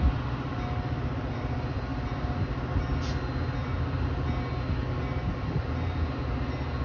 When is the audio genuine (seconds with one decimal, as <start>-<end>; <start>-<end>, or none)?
0.0-6.8